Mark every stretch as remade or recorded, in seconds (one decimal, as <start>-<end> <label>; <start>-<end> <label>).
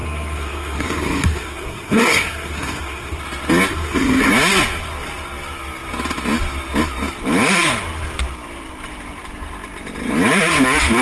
0.0-3.2 remade; 3.2-3.7 recorded; 3.7-4.3 remade; 4.3-11.0 recorded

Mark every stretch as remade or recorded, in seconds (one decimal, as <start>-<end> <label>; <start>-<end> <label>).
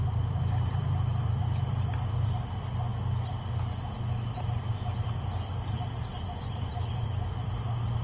0.0-2.9 remade; 2.9-5.2 recorded; 5.2-8.0 remade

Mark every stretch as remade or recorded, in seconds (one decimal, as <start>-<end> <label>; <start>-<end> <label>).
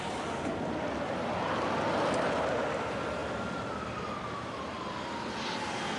0.0-6.0 recorded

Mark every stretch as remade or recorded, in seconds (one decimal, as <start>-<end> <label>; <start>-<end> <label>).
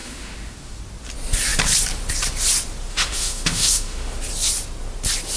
0.0-0.8 remade; 0.8-2.9 recorded; 2.9-4.2 remade; 4.2-5.4 recorded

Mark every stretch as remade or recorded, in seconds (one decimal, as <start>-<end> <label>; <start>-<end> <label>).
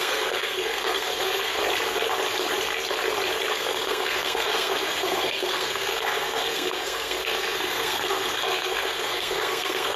0.0-1.6 remade; 1.6-3.5 recorded; 3.5-10.0 remade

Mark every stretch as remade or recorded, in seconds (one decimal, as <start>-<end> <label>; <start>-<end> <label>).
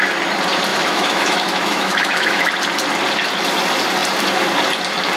0.0-0.7 recorded; 0.7-2.5 remade; 2.5-5.2 recorded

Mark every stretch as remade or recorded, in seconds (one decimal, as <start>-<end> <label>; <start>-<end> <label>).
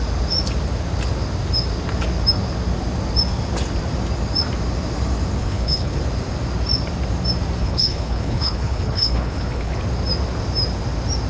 0.0-5.4 recorded; 5.4-6.0 remade; 6.0-7.6 recorded; 7.6-9.8 remade; 9.8-11.3 recorded